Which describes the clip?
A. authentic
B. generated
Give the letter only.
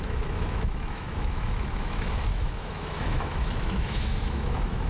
B